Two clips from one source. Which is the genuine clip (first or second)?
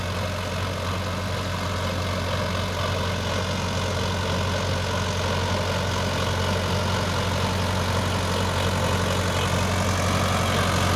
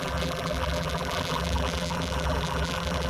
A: first